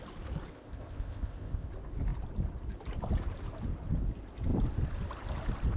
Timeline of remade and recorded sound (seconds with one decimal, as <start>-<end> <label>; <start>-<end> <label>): 0.0-0.5 recorded; 0.5-1.7 remade; 1.7-5.8 recorded